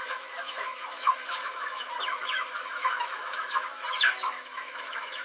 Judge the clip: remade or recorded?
remade